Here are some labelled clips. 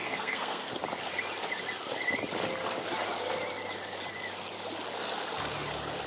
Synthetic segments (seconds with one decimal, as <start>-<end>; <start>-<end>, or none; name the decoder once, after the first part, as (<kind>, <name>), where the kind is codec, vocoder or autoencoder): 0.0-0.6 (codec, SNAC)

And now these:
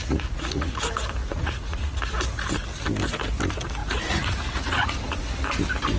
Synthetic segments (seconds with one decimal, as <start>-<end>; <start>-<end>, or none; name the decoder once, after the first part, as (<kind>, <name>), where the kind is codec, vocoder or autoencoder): 0.0-0.7 (vocoder, Vocos); 1.2-2.0; 3.8-5.2

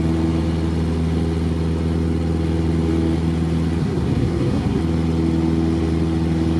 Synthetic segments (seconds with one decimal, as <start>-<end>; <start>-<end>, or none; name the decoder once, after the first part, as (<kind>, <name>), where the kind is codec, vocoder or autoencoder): 3.8-4.8 (codec, SNAC)

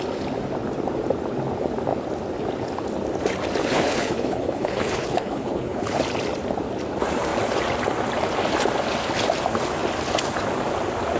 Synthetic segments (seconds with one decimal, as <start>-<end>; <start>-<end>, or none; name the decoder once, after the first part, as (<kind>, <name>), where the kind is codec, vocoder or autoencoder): 3.6-6.0 (codec, HILCodec)

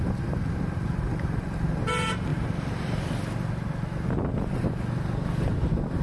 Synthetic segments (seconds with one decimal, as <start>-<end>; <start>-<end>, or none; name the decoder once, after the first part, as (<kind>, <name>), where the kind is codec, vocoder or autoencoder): none